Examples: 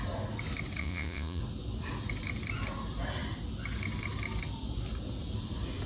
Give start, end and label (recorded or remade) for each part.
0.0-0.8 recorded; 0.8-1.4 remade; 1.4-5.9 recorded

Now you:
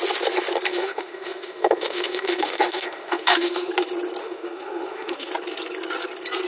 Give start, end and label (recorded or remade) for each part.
0.0-0.7 recorded; 0.7-3.7 remade; 3.7-4.2 recorded; 4.2-5.3 remade; 5.3-6.5 recorded

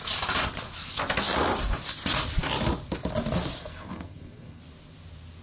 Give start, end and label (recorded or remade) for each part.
0.0-3.6 recorded; 3.6-4.6 remade; 4.6-5.4 recorded

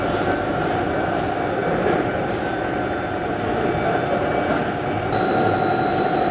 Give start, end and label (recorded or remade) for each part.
0.0-6.3 recorded

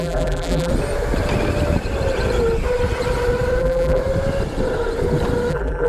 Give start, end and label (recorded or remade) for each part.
0.0-0.7 remade; 0.7-3.6 recorded; 3.6-4.0 remade; 4.0-5.5 recorded; 5.5-5.9 remade

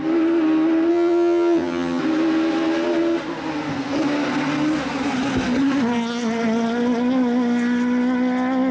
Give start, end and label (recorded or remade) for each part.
0.0-0.9 recorded; 0.9-2.0 remade; 2.0-8.7 recorded

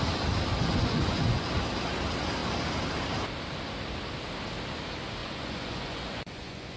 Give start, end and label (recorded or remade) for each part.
0.0-0.6 recorded; 0.6-1.5 remade; 1.5-5.2 recorded; 5.2-6.8 remade

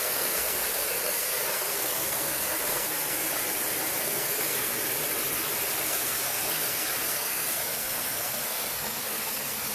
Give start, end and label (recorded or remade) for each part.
0.0-3.3 remade; 3.3-4.0 recorded; 4.0-4.7 remade; 4.7-5.8 recorded; 5.8-9.7 remade